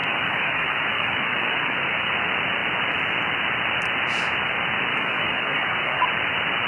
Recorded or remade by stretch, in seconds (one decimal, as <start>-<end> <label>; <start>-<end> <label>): 0.0-2.1 remade; 2.1-4.9 recorded; 4.9-6.1 remade; 6.1-6.7 recorded